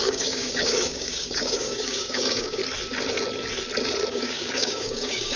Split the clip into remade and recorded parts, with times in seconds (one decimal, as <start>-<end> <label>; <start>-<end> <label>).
0.0-2.6 remade; 2.6-4.1 recorded; 4.1-5.4 remade